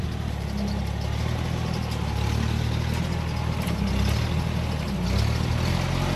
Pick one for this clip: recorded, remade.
recorded